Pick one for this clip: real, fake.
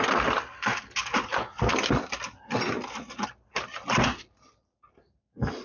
real